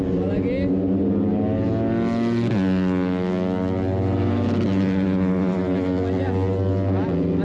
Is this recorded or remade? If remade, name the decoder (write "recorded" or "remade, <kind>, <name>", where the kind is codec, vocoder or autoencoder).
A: recorded